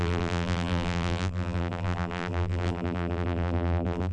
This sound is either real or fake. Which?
fake